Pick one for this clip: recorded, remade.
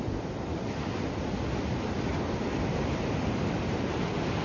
remade